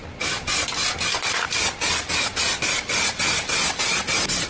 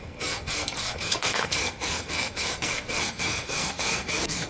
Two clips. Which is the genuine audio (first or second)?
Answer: first